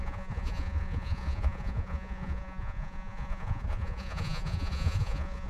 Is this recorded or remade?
remade